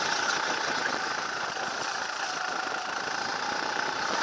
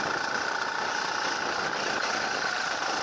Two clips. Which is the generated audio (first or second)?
first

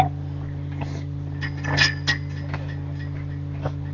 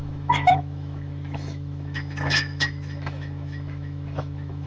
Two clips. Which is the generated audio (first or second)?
second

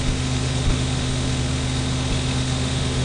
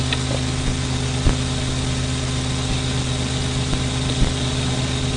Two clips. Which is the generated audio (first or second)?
first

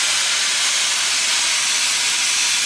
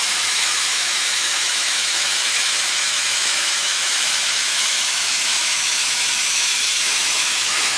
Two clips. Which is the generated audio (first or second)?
second